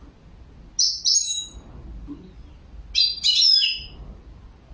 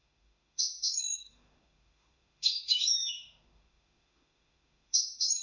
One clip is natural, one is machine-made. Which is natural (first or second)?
first